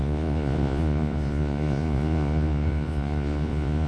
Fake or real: fake